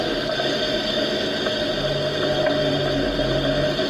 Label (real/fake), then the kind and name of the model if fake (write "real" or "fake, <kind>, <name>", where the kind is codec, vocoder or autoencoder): real